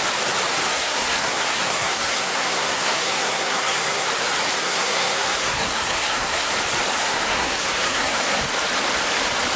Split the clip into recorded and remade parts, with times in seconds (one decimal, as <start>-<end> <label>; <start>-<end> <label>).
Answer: 0.0-0.7 recorded; 0.7-4.1 remade; 4.1-4.6 recorded; 4.6-6.5 remade; 6.5-7.0 recorded; 7.0-8.4 remade; 8.4-9.6 recorded